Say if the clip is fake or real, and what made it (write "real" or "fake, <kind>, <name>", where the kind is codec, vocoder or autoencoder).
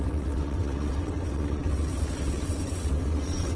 fake, vocoder, WaveNeXt